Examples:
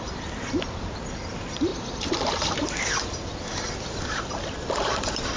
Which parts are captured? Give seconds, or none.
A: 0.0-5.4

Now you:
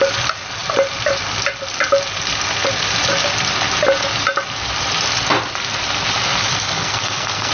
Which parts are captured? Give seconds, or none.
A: 0.0-6.5